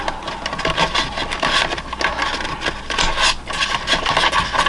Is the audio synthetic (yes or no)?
no